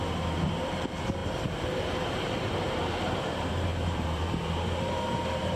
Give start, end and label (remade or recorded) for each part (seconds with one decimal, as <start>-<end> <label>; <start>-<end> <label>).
0.0-5.6 remade